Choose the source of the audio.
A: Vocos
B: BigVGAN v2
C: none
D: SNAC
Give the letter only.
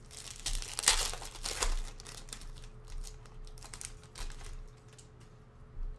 C